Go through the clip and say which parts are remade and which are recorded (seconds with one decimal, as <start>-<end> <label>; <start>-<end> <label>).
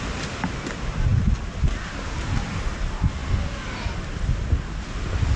0.0-5.4 recorded